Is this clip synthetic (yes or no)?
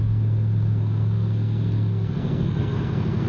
yes